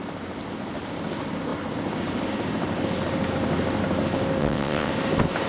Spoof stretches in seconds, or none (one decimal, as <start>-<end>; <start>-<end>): 4.4-4.9